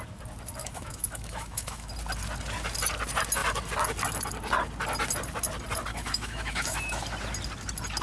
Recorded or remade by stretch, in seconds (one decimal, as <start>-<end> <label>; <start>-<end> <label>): 0.0-0.6 recorded; 0.6-1.9 remade; 1.9-5.9 recorded; 5.9-7.0 remade; 7.0-8.0 recorded